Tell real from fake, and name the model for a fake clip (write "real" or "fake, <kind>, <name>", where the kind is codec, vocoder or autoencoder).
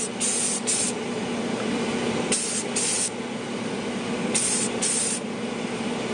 real